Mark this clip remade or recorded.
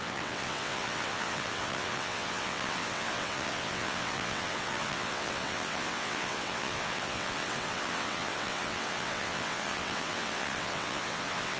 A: remade